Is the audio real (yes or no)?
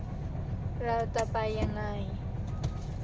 yes